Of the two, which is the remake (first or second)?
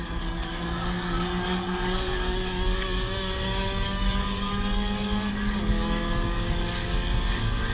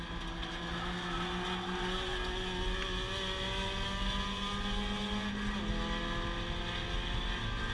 first